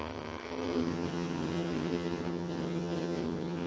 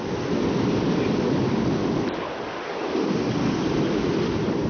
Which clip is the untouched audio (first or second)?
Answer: second